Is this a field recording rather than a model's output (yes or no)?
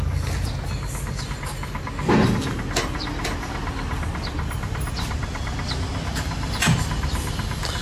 yes